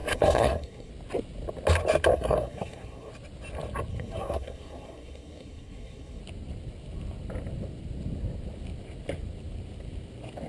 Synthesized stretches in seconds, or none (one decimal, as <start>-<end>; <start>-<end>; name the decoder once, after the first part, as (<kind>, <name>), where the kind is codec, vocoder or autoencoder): 0.0-0.9 (codec, SNAC); 2.1-3.1; 3.9-6.2